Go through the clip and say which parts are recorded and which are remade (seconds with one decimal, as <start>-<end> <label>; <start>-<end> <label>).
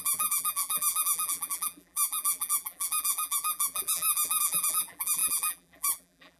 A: 0.0-6.4 remade